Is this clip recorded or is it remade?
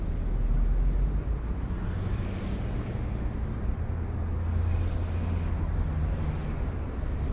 recorded